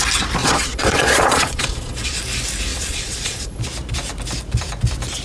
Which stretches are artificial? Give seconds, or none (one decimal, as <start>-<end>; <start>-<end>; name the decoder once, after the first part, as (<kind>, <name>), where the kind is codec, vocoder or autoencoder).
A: 0.4-2.2 (vocoder, Vocos); 2.7-3.6

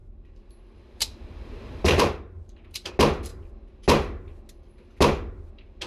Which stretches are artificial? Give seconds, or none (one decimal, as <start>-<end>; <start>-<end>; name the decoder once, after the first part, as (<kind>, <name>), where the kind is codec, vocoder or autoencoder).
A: 0.0-2.9 (vocoder, BigVGAN v2)

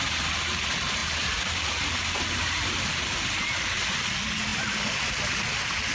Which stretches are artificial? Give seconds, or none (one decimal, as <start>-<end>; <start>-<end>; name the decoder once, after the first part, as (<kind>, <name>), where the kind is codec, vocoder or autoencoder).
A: 1.0-3.1 (vocoder, BigVGAN v2); 4.5-5.1

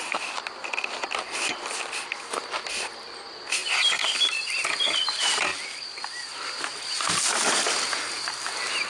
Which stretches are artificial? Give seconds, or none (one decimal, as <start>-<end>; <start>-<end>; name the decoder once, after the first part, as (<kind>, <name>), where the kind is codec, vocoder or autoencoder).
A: none